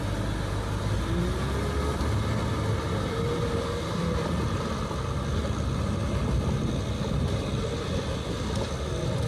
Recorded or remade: recorded